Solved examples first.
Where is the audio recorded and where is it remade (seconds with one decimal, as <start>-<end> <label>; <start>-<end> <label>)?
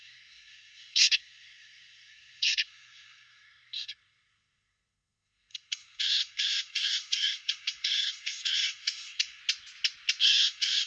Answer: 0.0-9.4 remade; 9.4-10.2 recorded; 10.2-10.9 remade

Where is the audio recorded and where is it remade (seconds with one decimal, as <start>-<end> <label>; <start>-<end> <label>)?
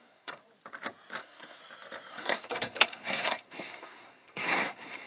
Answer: 0.0-0.4 remade; 0.4-1.2 recorded; 1.2-1.6 remade; 1.6-2.1 recorded; 2.1-5.1 remade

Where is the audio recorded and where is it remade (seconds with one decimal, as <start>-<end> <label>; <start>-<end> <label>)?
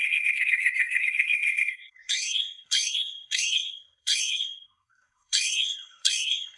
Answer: 0.0-6.6 remade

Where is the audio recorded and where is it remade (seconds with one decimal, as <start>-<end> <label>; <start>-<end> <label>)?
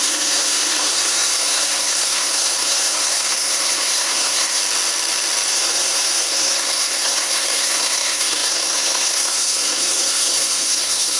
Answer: 0.0-4.6 remade; 4.6-5.5 recorded; 5.5-11.2 remade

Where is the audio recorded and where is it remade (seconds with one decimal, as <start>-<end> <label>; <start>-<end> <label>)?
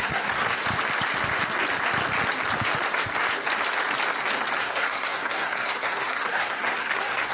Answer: 0.0-0.6 remade; 0.6-4.6 recorded; 4.6-7.3 remade